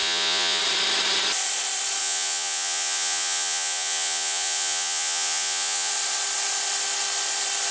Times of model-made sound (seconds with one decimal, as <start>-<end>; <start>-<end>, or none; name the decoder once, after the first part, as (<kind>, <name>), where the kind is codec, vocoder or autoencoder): 0.0-0.6 (vocoder, Vocos); 2.0-5.9